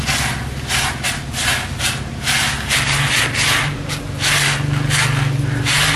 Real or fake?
real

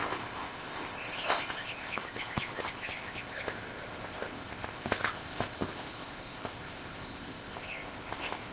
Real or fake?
fake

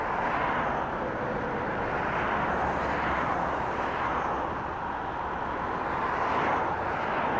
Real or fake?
real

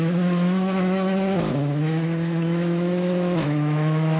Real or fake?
fake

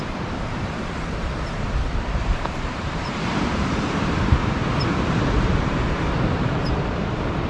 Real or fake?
fake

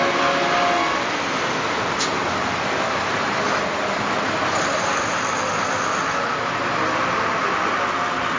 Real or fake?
real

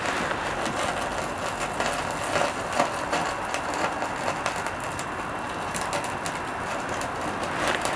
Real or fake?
real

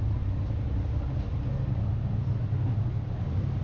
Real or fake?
real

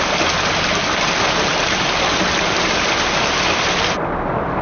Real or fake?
real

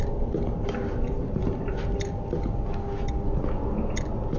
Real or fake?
real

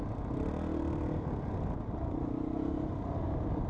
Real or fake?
real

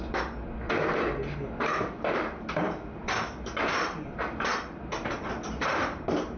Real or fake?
fake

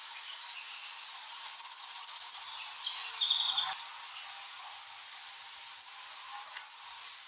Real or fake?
real